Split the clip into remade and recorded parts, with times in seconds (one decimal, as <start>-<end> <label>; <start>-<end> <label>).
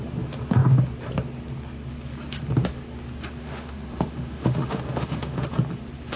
0.0-3.4 recorded; 3.4-5.5 remade; 5.5-6.2 recorded